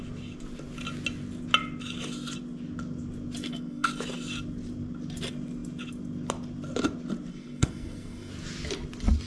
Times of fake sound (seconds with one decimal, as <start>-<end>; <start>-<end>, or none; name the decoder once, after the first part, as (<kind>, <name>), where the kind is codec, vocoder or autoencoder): 3.4-3.9 (codec, SNAC); 7.3-8.3